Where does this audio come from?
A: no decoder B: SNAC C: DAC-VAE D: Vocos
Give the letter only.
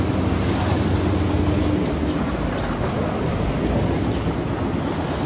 A